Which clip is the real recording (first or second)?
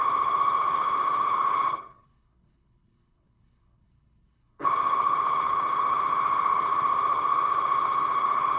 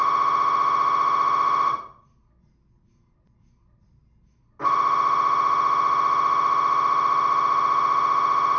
second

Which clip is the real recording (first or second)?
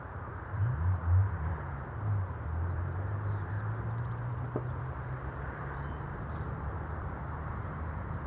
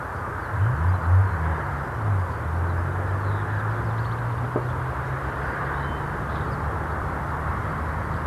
second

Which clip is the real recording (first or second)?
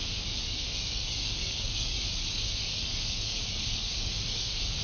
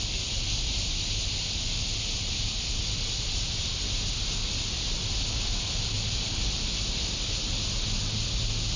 second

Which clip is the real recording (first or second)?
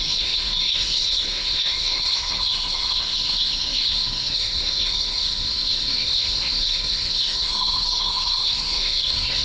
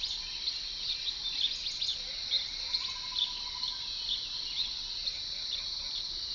second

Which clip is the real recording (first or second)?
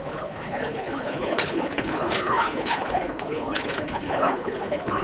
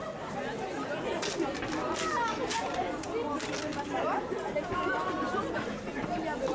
second